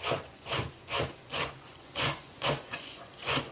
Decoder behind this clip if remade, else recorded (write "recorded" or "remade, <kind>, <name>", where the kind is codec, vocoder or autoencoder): remade, vocoder, Vocos